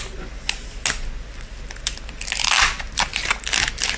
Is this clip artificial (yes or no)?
no